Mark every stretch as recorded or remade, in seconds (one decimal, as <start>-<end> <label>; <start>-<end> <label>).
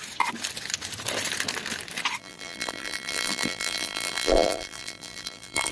0.0-2.2 recorded; 2.2-5.7 remade